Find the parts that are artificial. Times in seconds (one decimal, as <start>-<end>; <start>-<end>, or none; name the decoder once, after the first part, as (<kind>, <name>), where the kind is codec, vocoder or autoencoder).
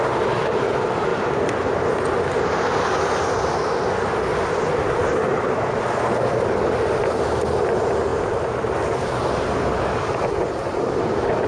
none